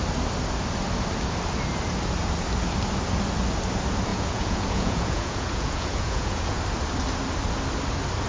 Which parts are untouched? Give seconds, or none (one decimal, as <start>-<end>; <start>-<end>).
0.0-4.1; 6.6-8.3